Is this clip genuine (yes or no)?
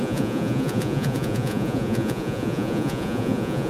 no